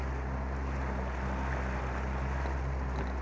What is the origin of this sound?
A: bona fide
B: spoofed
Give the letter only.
A